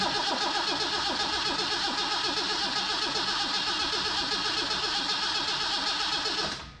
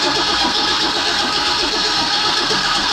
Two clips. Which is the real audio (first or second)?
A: first